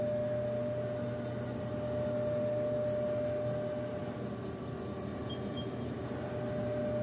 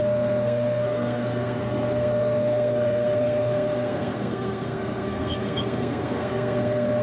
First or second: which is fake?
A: second